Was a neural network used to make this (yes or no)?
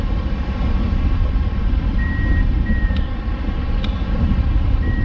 no